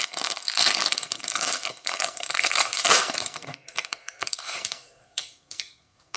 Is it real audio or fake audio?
fake